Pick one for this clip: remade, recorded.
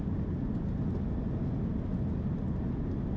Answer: recorded